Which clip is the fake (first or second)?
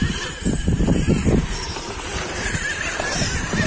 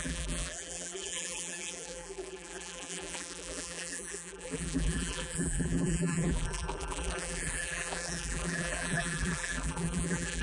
second